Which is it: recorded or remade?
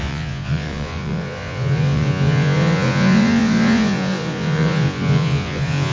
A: remade